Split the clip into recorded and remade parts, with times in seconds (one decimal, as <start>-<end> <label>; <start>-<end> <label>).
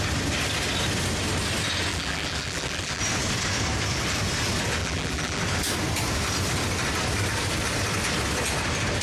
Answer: 0.0-1.9 recorded; 1.9-3.0 remade; 3.0-4.8 recorded; 4.8-5.4 remade; 5.4-9.0 recorded